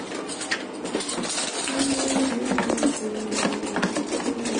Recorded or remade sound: recorded